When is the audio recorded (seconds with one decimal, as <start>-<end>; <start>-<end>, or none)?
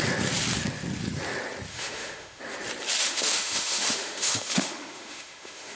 0.0-1.7; 2.4-3.0